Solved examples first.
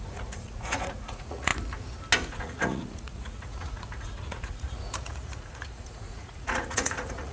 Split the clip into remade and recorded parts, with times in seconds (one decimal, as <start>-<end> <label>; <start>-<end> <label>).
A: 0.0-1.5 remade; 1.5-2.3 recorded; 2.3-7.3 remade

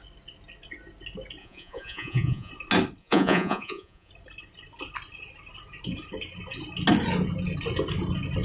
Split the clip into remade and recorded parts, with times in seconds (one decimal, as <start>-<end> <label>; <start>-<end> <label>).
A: 0.0-1.4 recorded; 1.4-2.5 remade; 2.5-3.0 recorded; 3.0-4.1 remade; 4.1-8.4 recorded

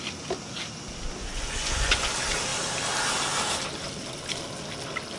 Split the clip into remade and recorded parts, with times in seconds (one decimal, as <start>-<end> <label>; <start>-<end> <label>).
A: 0.0-1.3 recorded; 1.3-2.1 remade; 2.1-5.2 recorded